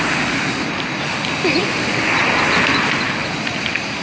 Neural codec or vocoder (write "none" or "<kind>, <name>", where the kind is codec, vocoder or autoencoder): none